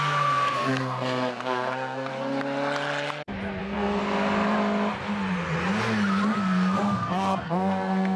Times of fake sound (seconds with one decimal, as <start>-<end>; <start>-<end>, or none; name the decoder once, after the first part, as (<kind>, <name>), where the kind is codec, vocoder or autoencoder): 0.0-2.1 (codec, SNAC); 3.6-4.0; 6.4-8.2